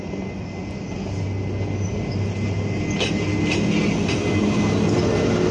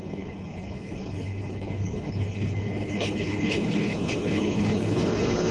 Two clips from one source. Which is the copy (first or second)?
second